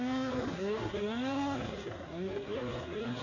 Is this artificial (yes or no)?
yes